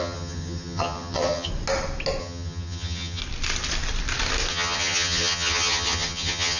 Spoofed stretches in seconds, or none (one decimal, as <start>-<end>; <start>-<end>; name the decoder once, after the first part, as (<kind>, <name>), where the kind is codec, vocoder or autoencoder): 0.0-1.5 (vocoder, HiFi-GAN); 2.2-3.2; 4.5-6.6